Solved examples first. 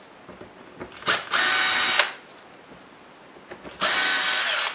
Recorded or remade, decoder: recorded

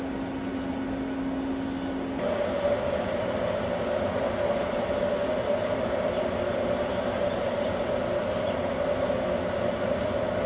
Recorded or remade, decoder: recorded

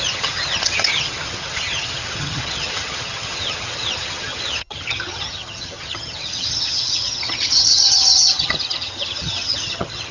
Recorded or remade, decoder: remade, vocoder, HiFi-GAN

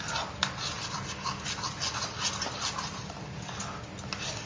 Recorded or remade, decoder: recorded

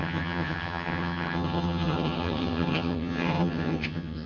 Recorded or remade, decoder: remade, vocoder, HiFi-GAN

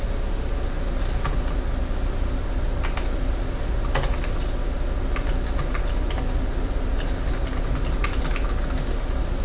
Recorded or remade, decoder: recorded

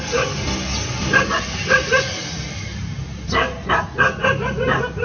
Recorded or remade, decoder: recorded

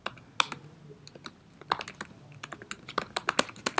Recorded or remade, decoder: recorded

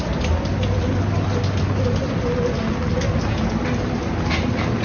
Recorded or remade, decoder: recorded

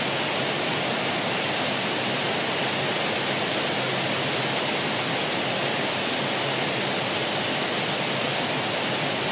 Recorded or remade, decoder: recorded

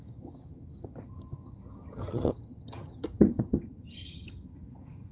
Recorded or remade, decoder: remade, vocoder, HiFi-GAN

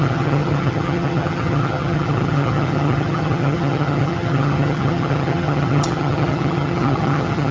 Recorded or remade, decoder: remade, vocoder, HiFi-GAN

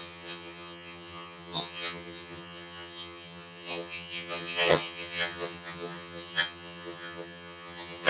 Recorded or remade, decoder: remade, vocoder, HiFi-GAN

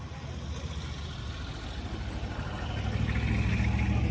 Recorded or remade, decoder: recorded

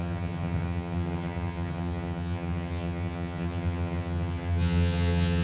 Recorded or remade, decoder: remade, vocoder, HiFi-GAN